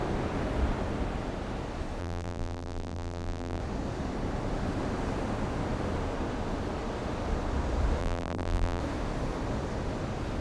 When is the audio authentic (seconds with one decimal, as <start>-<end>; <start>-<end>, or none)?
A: 0.0-2.0; 3.6-8.0; 8.8-10.4